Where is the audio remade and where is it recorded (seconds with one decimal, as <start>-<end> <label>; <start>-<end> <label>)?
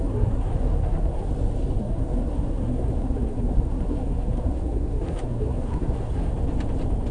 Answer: 0.0-1.3 remade; 1.3-1.8 recorded; 1.8-6.3 remade; 6.3-7.1 recorded